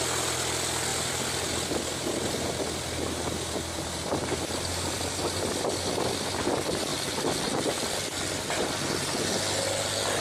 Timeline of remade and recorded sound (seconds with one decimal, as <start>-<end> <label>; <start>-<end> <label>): 0.0-10.2 recorded